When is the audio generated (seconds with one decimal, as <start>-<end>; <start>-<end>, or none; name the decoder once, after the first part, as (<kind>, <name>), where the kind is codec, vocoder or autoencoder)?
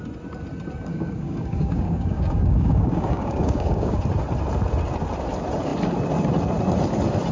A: 0.9-4.0 (codec, DAC)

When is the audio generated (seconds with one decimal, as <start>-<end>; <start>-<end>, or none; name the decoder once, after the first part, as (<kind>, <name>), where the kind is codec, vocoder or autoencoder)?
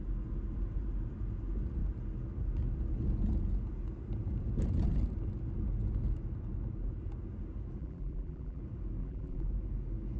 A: 7.8-8.6 (vocoder, BigVGAN v2); 9.0-9.5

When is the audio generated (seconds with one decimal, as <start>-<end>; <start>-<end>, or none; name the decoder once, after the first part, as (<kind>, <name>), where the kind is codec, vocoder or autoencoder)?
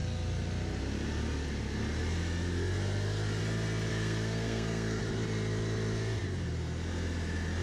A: 3.9-5.0 (codec, SNAC)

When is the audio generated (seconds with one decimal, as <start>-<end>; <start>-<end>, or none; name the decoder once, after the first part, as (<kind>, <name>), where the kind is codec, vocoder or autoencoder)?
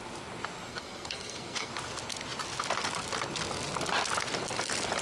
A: 0.7-1.7 (codec, SNAC)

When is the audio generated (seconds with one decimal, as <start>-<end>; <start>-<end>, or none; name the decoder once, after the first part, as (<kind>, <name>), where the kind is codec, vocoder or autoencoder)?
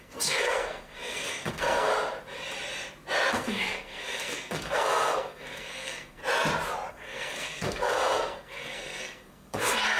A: 0.0-1.9 (codec, SNAC); 3.3-6.2; 6.9-10.0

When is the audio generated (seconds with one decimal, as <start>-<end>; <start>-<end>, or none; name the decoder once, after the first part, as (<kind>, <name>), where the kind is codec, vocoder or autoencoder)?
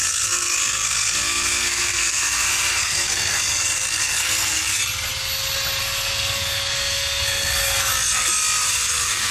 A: 0.0-4.8 (codec, SNAC); 5.8-7.9; 8.7-9.3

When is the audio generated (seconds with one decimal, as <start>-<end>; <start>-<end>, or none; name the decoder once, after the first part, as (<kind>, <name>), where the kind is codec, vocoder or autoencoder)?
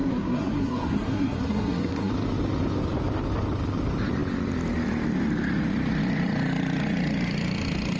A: 0.0-2.1 (codec, SNAC)